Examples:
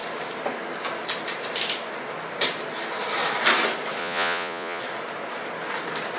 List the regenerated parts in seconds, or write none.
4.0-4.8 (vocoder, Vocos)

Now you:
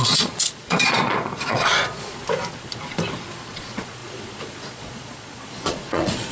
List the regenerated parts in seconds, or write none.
0.0-2.2 (vocoder, Vocos); 3.5-6.3

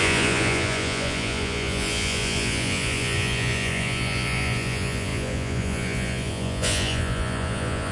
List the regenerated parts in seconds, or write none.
0.0-7.9 (vocoder, Vocos)

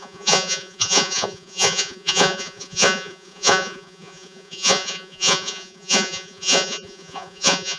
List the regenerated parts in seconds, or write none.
0.0-7.8 (vocoder, Vocos)

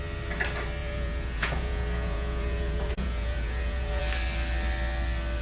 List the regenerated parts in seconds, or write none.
0.8-4.0 (vocoder, Vocos)

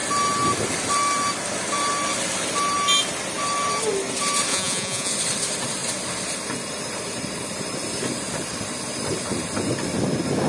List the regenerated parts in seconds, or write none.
4.5-5.1 (vocoder, Vocos)